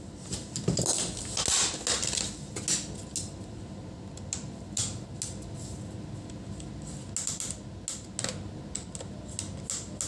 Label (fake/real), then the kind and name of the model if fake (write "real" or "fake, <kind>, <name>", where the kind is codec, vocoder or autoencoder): real